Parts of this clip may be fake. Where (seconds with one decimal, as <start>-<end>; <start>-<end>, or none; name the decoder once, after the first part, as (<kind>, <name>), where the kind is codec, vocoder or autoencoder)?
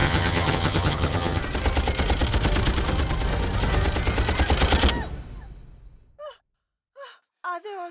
0.0-1.4 (vocoder, HiFi-GAN)